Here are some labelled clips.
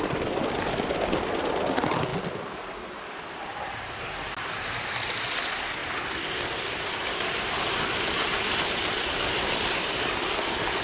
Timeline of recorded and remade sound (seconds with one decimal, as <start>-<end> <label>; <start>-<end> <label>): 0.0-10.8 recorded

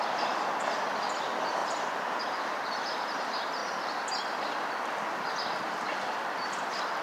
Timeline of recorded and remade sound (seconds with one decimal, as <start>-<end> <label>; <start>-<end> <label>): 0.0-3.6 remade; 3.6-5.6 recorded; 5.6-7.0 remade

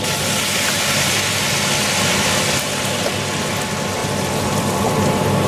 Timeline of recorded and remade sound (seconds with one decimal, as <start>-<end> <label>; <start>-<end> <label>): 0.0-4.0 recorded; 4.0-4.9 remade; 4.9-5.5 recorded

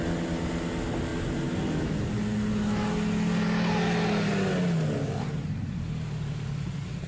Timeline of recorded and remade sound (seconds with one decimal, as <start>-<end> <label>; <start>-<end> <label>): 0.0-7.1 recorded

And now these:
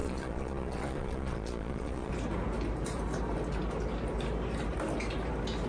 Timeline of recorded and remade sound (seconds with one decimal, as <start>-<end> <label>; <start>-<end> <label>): 0.0-2.1 remade; 2.1-5.7 recorded

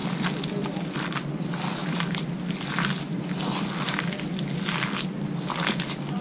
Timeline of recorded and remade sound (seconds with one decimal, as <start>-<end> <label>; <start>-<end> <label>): 0.0-6.2 recorded

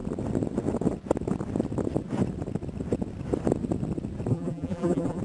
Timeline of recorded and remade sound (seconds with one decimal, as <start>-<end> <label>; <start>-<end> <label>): 0.0-4.3 recorded; 4.3-5.2 remade